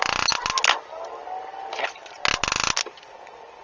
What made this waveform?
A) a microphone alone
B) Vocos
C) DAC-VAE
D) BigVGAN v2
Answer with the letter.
A